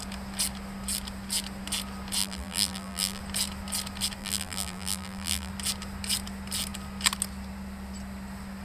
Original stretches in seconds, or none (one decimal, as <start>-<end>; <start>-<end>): 0.0-2.2; 3.2-4.2; 5.5-8.6

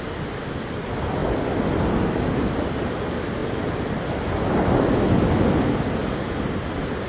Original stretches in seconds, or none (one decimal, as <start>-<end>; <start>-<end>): 0.0-3.4; 4.1-6.0

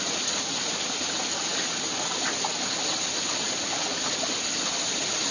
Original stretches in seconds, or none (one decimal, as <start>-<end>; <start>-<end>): 0.0-5.3

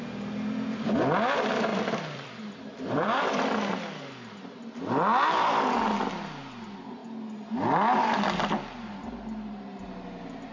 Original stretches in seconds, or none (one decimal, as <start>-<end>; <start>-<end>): 0.0-1.7; 3.4-10.5

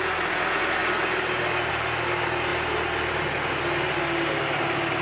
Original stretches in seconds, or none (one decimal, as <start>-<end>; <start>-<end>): 0.0-2.5; 3.6-5.0

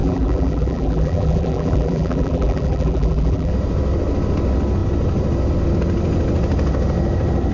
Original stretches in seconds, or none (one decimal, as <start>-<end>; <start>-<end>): 3.5-7.5

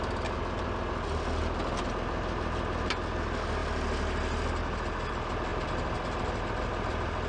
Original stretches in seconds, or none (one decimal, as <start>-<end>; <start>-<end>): 0.0-5.5; 6.2-7.3